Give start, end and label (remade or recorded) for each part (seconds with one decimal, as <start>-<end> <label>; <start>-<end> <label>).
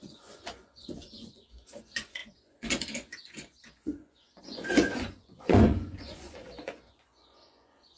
0.0-8.0 remade